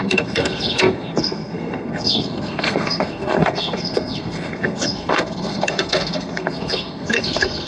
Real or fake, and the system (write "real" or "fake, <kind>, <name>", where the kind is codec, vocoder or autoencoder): fake, codec, SNAC